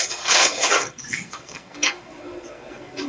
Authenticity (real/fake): fake